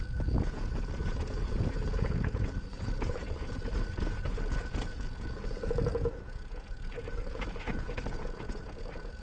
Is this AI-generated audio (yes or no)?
yes